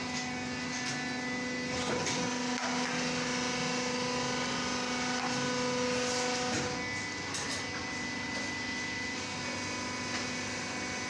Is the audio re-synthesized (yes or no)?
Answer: no